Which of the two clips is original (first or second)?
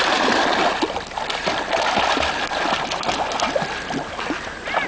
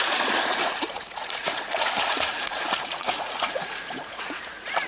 first